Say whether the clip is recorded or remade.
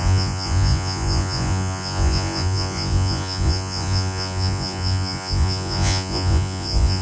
remade